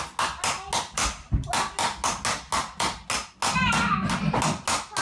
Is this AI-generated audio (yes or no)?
no